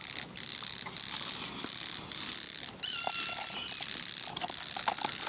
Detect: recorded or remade recorded